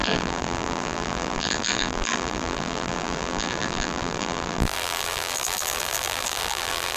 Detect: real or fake fake